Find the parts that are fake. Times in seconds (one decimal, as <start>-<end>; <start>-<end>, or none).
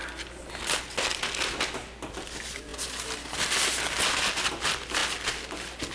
none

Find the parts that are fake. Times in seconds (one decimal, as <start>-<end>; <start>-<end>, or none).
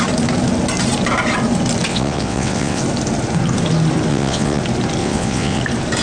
1.9-2.8; 4.1-4.6; 5.0-5.6